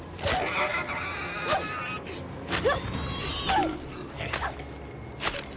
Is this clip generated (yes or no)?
no